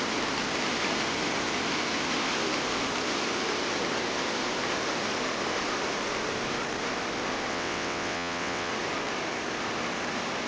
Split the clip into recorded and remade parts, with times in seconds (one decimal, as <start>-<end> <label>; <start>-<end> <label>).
0.0-7.5 recorded; 7.5-8.7 remade; 8.7-10.5 recorded